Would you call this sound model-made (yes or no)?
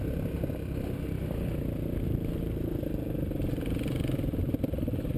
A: no